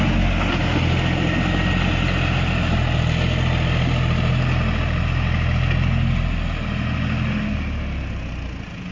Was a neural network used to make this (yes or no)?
no